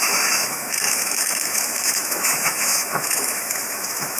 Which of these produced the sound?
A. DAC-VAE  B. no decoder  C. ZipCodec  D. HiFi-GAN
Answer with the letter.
A